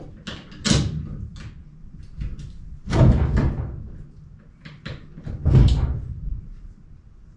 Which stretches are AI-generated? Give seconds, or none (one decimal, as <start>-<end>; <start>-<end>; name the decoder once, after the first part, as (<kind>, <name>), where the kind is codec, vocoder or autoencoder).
none